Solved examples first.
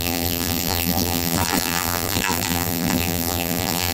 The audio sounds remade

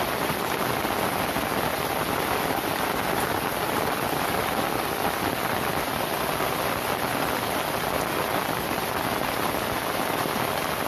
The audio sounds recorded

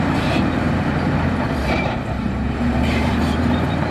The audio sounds remade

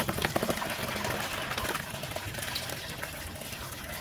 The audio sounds recorded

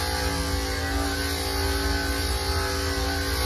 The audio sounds recorded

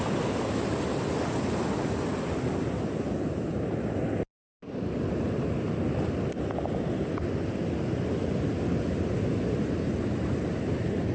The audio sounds recorded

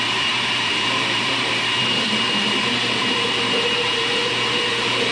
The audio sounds remade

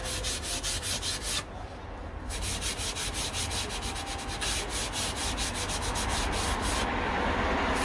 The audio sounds recorded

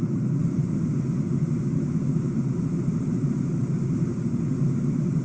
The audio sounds remade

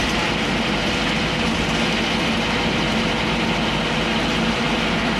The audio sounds recorded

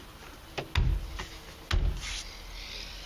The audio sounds recorded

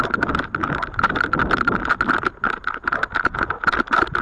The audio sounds recorded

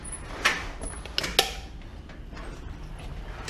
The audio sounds recorded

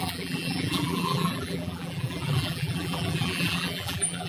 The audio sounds remade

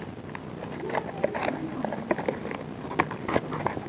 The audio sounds recorded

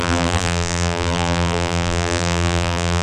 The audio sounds remade